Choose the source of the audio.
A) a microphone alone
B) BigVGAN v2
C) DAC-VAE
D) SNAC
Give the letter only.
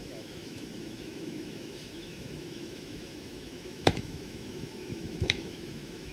C